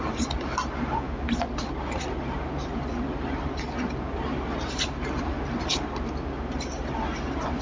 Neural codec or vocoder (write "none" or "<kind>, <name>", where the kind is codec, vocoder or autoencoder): none